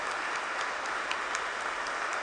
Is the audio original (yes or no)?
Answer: yes